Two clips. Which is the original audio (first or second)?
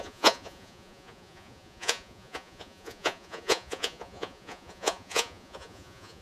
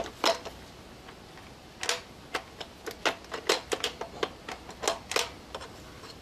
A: second